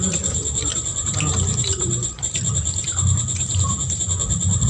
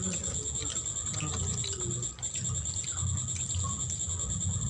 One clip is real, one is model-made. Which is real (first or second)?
second